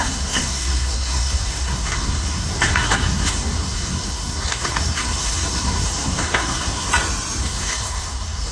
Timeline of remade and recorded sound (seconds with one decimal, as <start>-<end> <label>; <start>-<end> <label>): 0.0-6.9 remade; 6.9-7.4 recorded; 7.4-8.5 remade